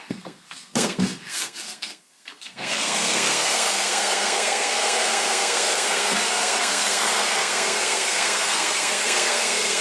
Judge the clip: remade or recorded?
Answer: remade